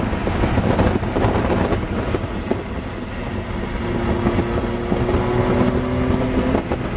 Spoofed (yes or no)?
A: no